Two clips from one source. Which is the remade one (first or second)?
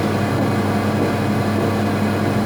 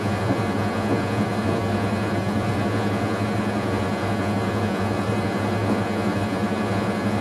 second